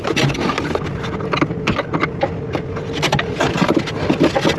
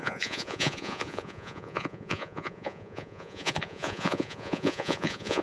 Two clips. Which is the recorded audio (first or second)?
first